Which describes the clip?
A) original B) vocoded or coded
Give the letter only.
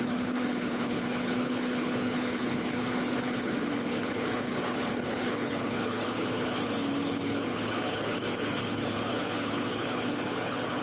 B